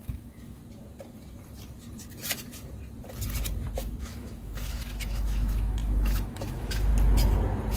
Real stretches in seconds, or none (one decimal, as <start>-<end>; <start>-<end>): 0.6-4.0; 6.9-7.8